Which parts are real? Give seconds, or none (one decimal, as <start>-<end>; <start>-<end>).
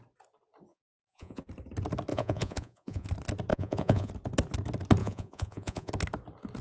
0.0-0.7; 1.4-2.1; 3.1-3.5; 4.1-5.0; 5.9-6.6